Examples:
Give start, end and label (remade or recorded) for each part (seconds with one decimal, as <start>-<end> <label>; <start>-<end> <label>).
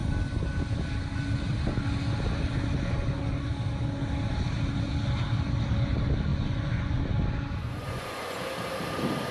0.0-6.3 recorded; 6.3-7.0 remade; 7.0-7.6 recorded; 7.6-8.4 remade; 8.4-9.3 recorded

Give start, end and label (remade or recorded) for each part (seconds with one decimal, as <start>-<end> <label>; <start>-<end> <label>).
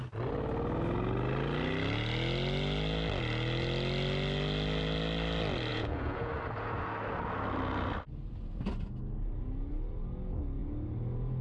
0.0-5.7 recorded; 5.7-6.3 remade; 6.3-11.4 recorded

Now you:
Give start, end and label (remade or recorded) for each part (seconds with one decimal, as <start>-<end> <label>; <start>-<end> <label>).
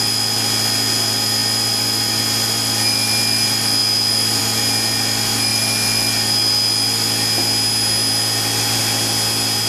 0.0-9.7 recorded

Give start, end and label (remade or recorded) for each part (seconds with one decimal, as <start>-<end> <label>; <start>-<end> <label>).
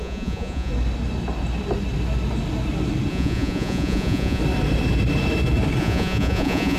0.0-0.7 remade; 0.7-3.1 recorded; 3.1-4.4 remade; 4.4-5.8 recorded; 5.8-6.8 remade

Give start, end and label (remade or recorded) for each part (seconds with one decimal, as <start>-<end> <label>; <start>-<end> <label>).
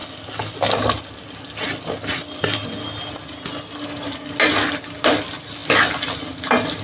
0.0-6.8 recorded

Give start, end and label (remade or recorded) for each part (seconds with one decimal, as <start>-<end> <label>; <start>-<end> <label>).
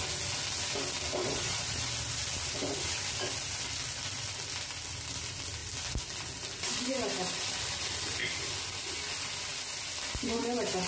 0.0-1.2 recorded; 1.2-1.8 remade; 1.8-10.9 recorded